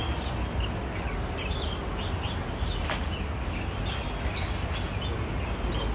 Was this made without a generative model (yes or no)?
yes